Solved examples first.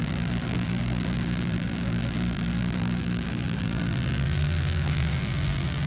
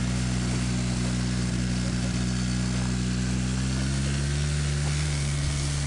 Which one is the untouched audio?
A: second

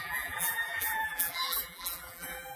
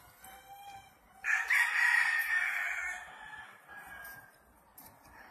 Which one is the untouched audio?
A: second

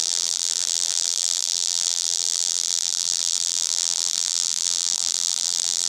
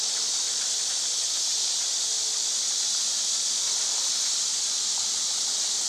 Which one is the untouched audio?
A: second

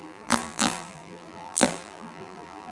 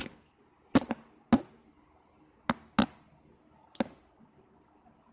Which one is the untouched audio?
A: second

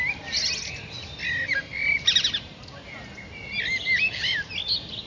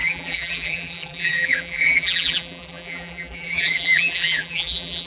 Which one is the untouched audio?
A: first